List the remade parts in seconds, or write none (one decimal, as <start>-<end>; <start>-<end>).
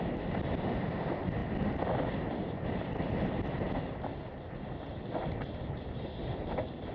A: none